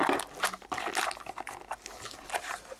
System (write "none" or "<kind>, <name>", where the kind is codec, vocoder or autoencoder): none